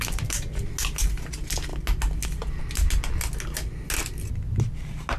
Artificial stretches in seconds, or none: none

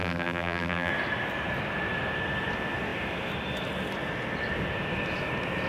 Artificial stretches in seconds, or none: 0.0-0.9 (vocoder, BigVGAN v2)

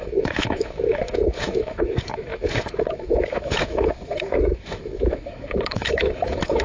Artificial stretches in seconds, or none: 0.0-6.6 (autoencoder, DAC-VAE)

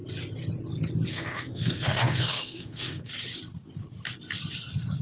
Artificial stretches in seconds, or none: 1.1-3.1 (codec, SNAC)

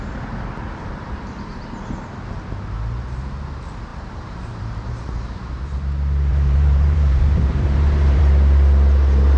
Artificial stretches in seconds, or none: 3.9-5.4 (vocoder, BigVGAN v2); 6.3-8.2

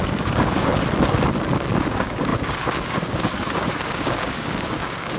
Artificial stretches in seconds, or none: 0.0-0.7 (codec, DAC); 1.7-5.2

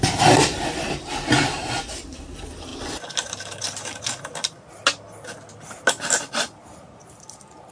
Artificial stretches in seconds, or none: none